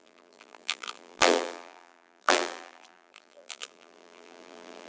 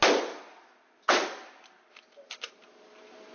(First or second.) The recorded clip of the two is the second